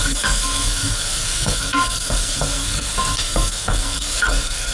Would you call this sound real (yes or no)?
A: no